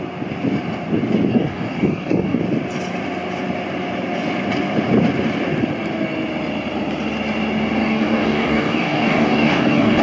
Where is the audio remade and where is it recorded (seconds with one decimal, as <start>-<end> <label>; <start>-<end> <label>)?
0.0-1.3 recorded; 1.3-2.4 remade; 2.4-7.8 recorded; 7.8-10.0 remade